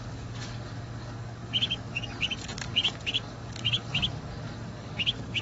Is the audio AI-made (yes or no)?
yes